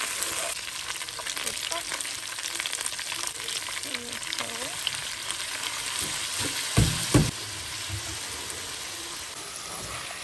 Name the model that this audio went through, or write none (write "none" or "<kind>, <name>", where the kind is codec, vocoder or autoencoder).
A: none